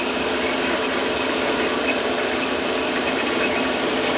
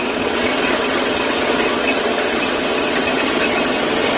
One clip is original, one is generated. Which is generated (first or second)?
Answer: second